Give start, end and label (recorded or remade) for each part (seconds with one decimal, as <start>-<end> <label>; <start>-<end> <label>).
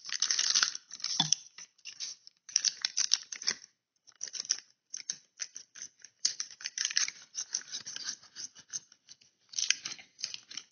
0.0-2.2 recorded; 2.2-2.8 remade; 2.8-9.6 recorded; 9.6-10.7 remade